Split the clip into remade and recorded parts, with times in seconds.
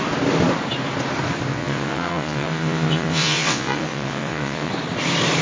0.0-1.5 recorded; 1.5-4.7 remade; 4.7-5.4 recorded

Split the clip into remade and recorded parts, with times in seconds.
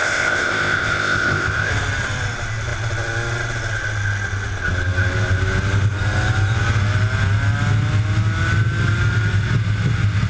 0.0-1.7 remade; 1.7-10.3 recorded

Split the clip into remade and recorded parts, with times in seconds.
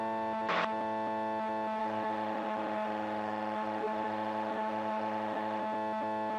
0.0-1.8 recorded; 1.8-5.6 remade; 5.6-6.4 recorded